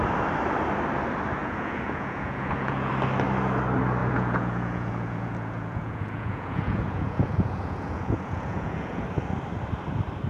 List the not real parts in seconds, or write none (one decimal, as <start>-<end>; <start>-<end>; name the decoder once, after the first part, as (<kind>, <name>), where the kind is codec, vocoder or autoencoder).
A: 1.4-2.9 (vocoder, Vocos); 4.0-9.0